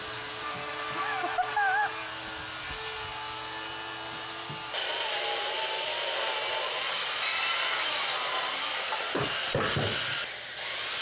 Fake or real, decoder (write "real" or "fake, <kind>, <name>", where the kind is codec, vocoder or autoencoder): real